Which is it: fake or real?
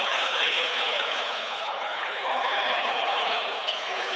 fake